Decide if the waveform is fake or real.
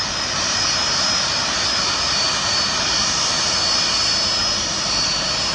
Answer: real